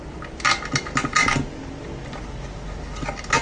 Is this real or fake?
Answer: real